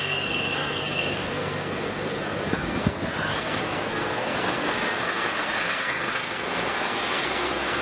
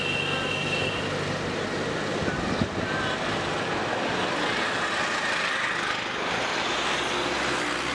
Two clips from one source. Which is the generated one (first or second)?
first